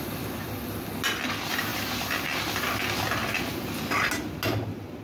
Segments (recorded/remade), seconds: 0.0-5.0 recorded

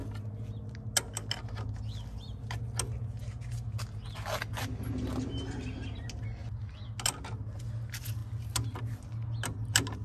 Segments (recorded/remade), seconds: 0.0-10.0 recorded

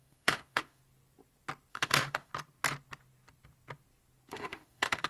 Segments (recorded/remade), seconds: 0.0-0.8 remade; 0.8-1.7 recorded; 1.7-2.3 remade; 2.3-4.3 recorded; 4.3-5.1 remade

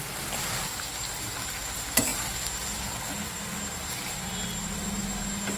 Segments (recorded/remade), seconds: 0.0-5.6 recorded

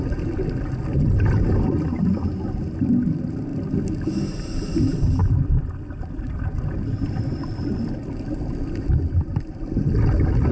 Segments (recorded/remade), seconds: 0.0-10.5 recorded

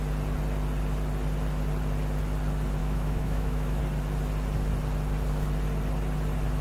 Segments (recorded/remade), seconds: 0.0-2.8 recorded; 2.8-3.8 remade; 3.8-6.6 recorded

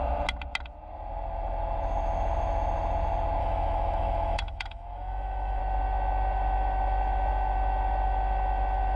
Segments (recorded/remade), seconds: 0.0-3.4 recorded; 3.4-5.6 remade; 5.6-9.0 recorded